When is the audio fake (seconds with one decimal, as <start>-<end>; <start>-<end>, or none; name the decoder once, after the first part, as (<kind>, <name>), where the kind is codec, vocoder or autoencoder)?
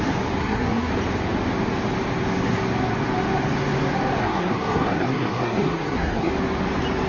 0.4-0.9 (codec, SNAC); 4.2-6.3